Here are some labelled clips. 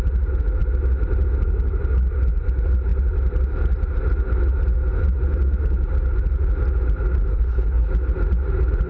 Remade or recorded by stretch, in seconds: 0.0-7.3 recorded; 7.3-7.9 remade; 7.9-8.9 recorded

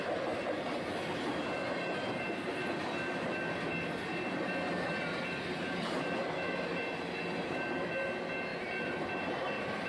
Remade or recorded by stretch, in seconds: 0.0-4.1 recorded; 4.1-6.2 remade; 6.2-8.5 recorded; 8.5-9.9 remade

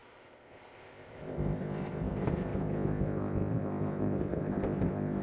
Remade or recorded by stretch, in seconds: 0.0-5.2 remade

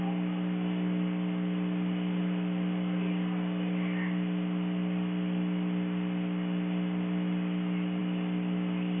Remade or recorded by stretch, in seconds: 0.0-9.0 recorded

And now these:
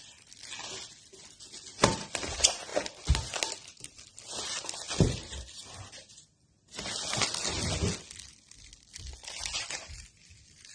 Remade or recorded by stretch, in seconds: 0.0-10.7 recorded